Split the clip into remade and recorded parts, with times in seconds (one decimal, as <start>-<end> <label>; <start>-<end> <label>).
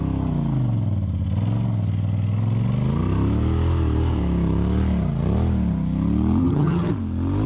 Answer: 0.0-6.4 recorded; 6.4-6.9 remade; 6.9-7.5 recorded